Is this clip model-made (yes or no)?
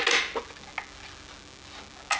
no